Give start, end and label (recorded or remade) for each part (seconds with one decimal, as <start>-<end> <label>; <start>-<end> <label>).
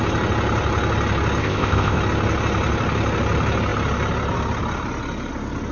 0.0-1.4 recorded; 1.4-2.0 remade; 2.0-5.7 recorded